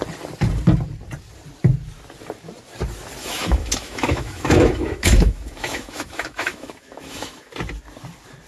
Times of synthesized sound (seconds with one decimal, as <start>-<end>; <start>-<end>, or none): 3.2-7.5